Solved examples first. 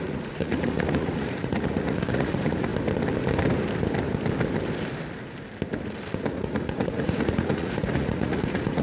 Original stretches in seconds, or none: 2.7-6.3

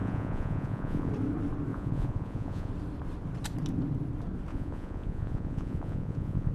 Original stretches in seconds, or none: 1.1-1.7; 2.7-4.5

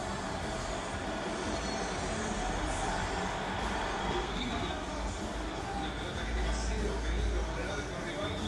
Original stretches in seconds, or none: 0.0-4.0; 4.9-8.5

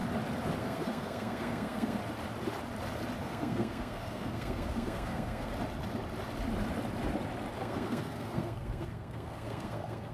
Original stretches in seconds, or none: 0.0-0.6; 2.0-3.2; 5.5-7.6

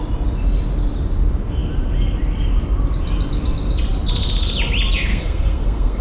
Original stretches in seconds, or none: 0.0-5.1

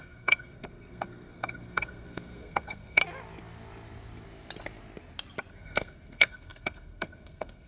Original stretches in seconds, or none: 3.0-5.5

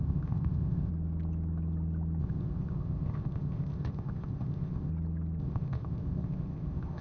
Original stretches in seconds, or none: 0.9-2.2; 4.9-5.4